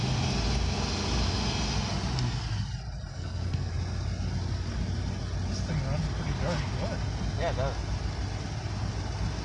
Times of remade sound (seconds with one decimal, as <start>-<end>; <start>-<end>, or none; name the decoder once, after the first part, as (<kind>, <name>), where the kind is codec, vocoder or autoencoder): 3.1-3.7 (codec, SNAC)